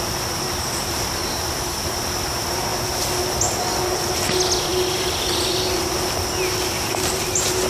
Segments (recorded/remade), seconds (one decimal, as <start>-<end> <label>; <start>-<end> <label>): 0.0-7.7 recorded